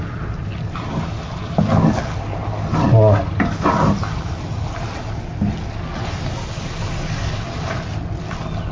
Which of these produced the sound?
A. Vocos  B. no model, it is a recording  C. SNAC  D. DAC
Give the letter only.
B